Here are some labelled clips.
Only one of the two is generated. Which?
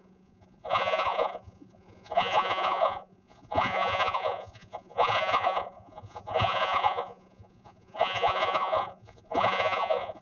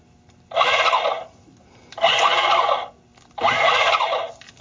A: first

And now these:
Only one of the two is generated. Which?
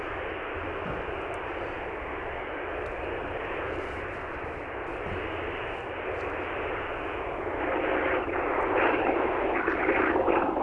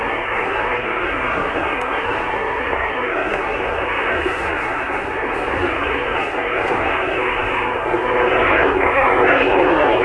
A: second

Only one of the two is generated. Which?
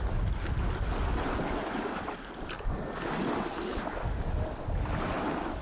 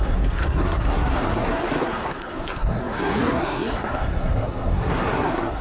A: second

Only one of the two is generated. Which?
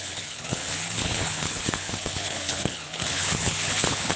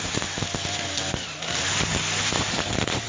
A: first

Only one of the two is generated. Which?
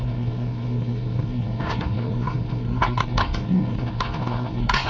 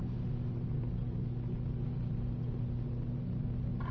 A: first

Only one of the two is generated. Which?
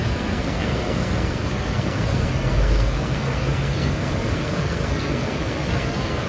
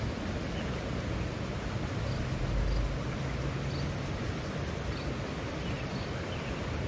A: first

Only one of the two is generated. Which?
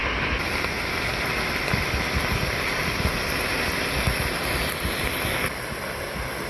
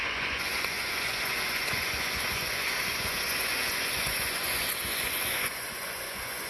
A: second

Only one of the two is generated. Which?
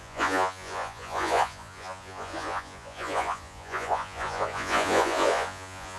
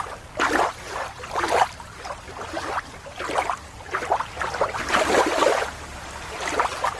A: first